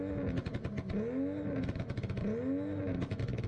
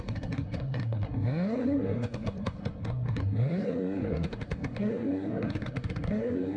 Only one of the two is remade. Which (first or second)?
second